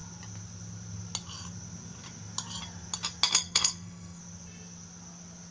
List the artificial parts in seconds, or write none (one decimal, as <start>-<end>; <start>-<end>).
3.3-4.2